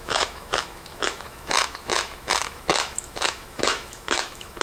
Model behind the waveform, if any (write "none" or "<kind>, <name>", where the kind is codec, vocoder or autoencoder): autoencoder, DAC-VAE